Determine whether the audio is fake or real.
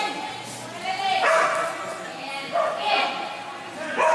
real